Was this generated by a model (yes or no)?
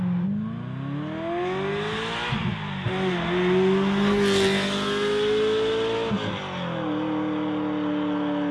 no